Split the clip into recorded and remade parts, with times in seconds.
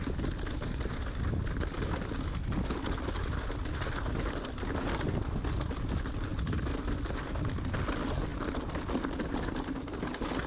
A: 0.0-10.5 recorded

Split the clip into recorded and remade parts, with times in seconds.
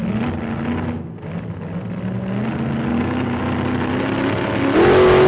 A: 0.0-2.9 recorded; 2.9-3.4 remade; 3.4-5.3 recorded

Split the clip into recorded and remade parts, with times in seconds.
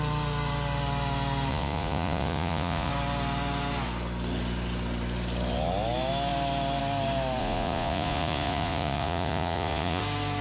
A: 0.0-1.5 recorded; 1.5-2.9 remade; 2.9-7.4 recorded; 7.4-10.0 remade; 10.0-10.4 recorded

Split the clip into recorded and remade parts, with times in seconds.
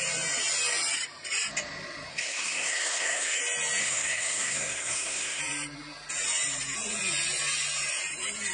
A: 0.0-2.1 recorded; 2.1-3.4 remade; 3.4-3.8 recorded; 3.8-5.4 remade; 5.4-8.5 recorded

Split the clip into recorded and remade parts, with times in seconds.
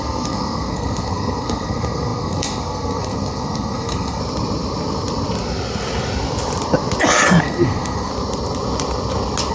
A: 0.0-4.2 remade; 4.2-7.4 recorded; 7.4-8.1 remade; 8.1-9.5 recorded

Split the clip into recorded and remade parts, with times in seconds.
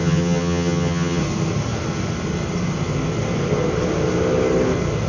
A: 0.0-1.2 remade; 1.2-5.1 recorded